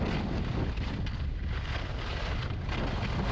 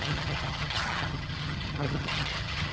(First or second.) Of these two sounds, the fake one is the second